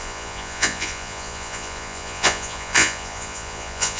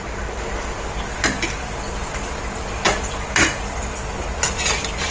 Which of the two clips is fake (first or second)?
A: first